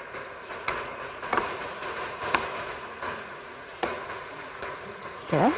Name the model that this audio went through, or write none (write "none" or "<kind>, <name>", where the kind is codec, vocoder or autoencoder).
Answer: vocoder, Vocos